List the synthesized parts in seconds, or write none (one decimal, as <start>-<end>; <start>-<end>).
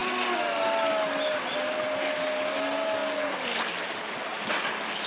none